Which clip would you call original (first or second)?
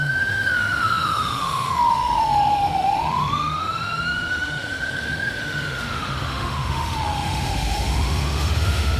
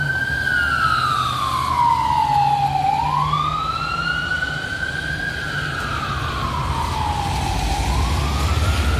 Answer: second